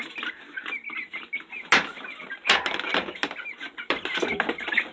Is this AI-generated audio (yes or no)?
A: no